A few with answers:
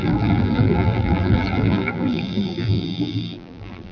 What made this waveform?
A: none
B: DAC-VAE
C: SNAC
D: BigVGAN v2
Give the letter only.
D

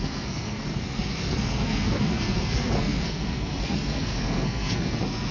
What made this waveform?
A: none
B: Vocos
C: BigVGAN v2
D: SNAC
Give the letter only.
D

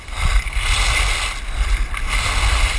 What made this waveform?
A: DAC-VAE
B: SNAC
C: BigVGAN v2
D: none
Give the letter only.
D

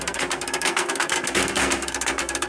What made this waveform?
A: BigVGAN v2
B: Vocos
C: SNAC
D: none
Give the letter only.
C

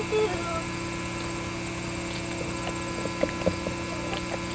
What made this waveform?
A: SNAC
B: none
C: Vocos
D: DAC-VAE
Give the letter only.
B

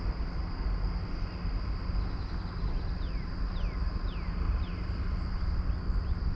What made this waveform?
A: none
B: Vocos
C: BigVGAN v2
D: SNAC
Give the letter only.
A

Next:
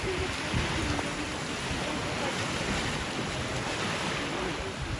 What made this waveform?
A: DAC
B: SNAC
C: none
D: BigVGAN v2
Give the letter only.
C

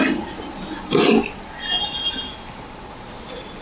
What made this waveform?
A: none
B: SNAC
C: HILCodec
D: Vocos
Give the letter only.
A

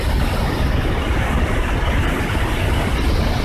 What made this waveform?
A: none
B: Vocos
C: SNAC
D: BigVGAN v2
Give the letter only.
A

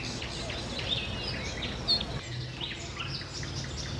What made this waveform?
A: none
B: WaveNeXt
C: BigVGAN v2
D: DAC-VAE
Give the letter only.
A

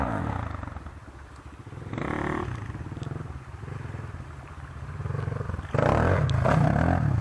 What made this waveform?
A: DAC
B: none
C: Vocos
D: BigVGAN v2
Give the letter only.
B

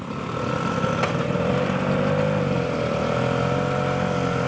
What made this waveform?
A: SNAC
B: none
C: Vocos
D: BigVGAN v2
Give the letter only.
B